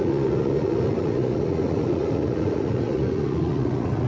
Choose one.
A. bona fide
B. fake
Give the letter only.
B